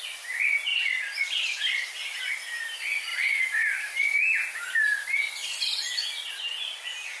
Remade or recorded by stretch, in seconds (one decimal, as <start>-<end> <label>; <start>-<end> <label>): 0.0-0.7 recorded; 0.7-2.2 remade; 2.2-5.4 recorded; 5.4-6.8 remade; 6.8-7.2 recorded